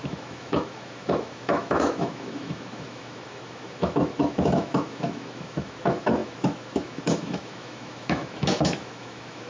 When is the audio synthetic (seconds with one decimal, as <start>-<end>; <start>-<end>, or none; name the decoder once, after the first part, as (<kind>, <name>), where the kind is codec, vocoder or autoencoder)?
0.0-9.5 (autoencoder, DAC-VAE)